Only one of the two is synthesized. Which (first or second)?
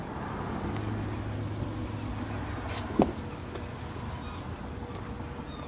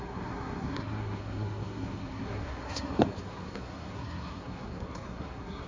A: second